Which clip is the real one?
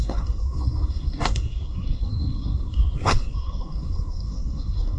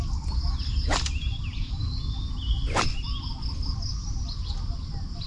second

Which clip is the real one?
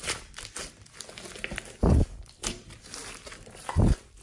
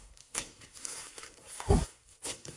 first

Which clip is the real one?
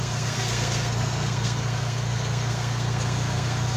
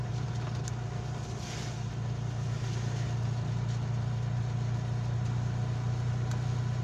second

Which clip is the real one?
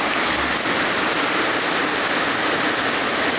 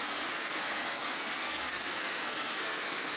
first